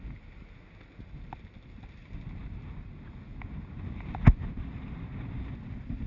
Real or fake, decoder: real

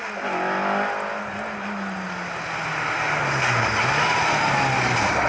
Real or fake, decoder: real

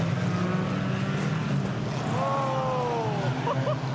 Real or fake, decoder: real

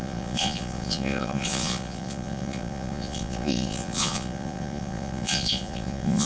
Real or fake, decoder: fake, vocoder, Vocos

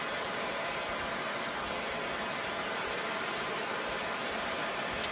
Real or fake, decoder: real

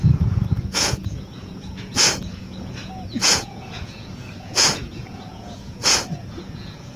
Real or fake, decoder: fake, vocoder, Vocos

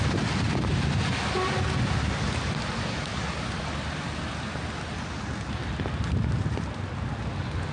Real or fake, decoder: real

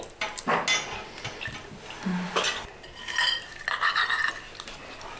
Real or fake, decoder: real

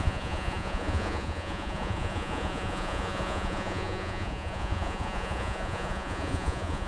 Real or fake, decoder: fake, vocoder, Vocos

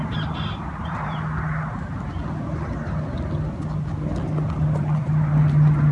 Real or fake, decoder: real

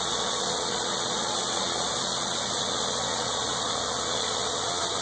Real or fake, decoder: fake, vocoder, Vocos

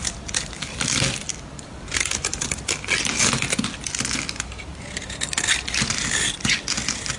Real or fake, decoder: real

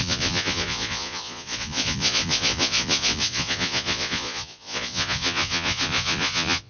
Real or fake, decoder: fake, vocoder, Vocos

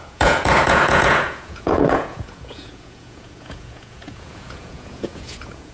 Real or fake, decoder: fake, vocoder, Vocos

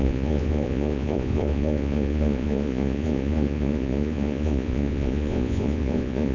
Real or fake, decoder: fake, vocoder, Vocos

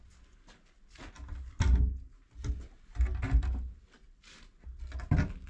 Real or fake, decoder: real